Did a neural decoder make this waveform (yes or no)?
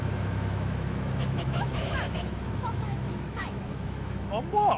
yes